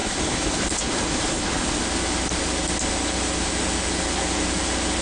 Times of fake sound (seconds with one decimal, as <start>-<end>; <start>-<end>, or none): 0.0-1.8